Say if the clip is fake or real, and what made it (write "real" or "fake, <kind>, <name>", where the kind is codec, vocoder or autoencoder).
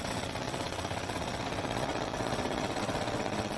fake, vocoder, WaveNeXt